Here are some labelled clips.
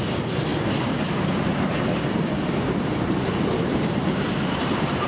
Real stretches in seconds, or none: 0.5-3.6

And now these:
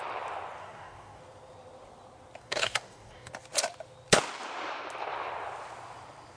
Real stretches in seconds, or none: 0.0-0.6; 1.2-2.4; 3.3-6.4

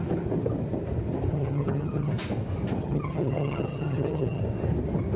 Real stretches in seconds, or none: 0.0-1.3; 2.1-2.8; 4.4-5.2

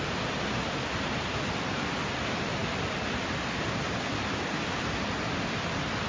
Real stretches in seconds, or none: 0.0-6.1

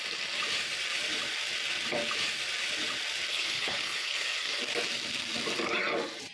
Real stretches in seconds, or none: 0.0-3.3; 4.6-6.3

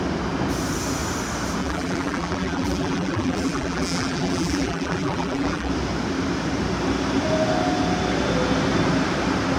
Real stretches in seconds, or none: 0.0-1.6; 5.7-9.6